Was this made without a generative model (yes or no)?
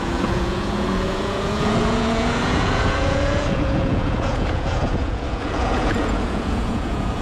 no